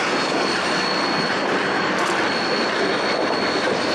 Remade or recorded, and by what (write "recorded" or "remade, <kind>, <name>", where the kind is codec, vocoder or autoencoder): recorded